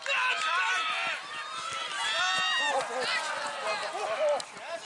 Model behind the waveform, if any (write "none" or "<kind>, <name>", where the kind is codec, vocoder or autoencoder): none